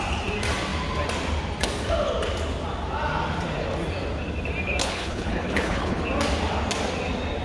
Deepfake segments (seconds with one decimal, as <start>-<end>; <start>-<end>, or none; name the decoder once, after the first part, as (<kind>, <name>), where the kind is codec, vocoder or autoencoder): 4.8-6.0 (codec, HILCodec)